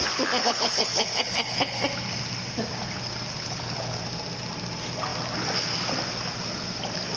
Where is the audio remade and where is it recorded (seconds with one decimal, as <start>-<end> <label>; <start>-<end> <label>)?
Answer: 0.0-0.4 recorded; 0.4-1.8 remade; 1.8-3.3 recorded; 3.3-4.0 remade; 4.0-7.2 recorded